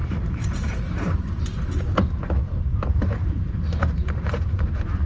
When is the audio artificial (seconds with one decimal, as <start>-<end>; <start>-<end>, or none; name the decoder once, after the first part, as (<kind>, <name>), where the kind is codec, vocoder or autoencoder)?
0.0-1.4 (vocoder, BigVGAN v2); 2.7-3.4